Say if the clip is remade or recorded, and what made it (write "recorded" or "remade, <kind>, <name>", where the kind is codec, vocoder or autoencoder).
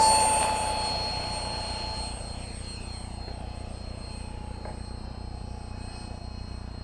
recorded